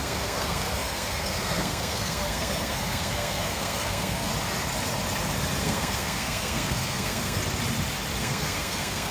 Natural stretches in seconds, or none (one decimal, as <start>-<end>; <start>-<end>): 4.3-5.6; 7.4-8.2